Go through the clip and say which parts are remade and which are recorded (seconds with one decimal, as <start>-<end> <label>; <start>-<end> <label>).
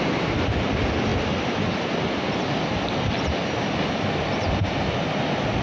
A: 0.0-5.6 recorded